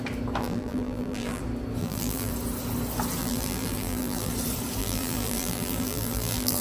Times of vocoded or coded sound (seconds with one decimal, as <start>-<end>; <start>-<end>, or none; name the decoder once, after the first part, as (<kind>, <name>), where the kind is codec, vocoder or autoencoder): 0.4-1.4 (vocoder, BigVGAN v2); 1.8-2.3; 3.2-4.3; 4.8-6.6